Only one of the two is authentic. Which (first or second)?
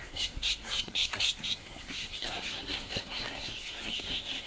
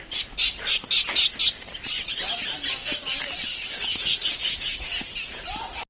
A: second